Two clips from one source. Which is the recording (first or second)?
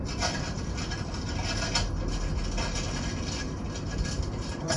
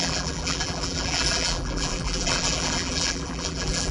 first